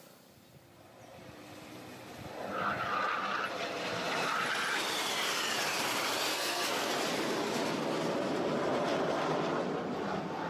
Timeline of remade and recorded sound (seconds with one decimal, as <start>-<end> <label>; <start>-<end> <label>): 0.0-6.3 recorded; 6.3-6.9 remade; 6.9-10.5 recorded